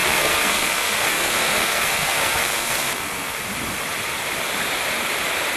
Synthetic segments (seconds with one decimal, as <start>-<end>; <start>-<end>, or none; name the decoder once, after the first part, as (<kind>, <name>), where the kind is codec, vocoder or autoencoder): 0.0-3.4 (codec, SNAC)

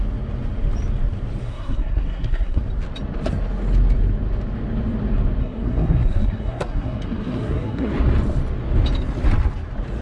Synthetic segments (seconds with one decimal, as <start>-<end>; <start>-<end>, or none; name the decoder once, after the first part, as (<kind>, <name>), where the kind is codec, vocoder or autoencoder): 1.4-2.6 (codec, SNAC); 5.4-7.9

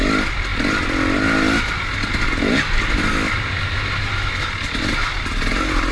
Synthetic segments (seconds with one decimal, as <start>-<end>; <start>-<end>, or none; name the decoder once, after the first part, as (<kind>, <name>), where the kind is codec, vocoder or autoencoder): none

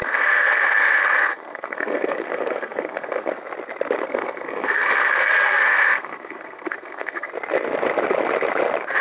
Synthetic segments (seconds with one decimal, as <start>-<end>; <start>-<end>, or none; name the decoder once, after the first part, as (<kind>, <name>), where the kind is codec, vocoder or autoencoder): 0.0-3.3 (codec, SNAC); 4.0-7.3

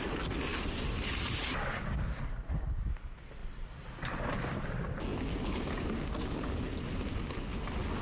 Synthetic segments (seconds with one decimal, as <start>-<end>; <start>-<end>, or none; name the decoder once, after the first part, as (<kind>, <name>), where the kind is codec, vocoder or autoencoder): none

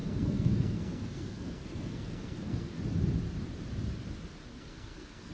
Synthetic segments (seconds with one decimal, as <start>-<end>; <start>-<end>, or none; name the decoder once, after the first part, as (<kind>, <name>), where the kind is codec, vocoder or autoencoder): 0.0-2.8 (codec, SNAC); 4.5-5.3

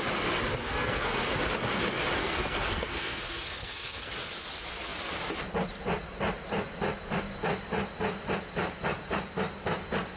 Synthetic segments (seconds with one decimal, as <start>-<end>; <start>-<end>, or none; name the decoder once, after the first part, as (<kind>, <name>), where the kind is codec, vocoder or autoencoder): 0.6-1.4 (codec, SNAC); 2.2-4.1